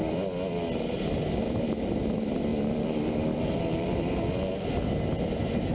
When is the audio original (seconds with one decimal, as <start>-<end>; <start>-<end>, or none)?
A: 0.0-2.5; 4.1-5.7

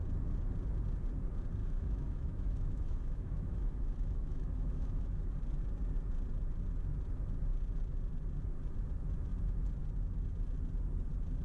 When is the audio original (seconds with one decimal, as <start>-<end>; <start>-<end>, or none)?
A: 0.0-1.6; 5.3-11.4

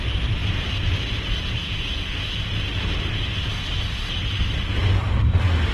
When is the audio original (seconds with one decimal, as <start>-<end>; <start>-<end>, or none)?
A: 0.0-0.4; 1.8-5.7

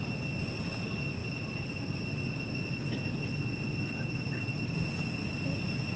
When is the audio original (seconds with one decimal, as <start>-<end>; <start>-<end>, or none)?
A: 0.0-6.0